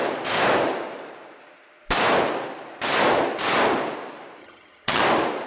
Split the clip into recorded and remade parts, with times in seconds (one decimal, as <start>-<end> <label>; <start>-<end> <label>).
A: 0.0-4.4 recorded; 4.4-5.0 remade; 5.0-5.5 recorded